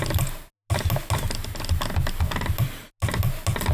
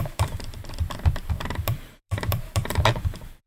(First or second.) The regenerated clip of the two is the second